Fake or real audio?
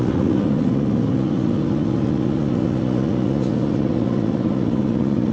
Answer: fake